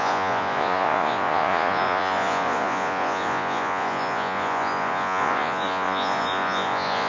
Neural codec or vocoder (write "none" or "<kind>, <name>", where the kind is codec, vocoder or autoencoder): vocoder, Vocos